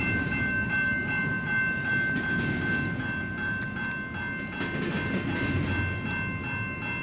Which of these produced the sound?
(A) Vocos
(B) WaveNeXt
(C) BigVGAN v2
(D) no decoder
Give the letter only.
D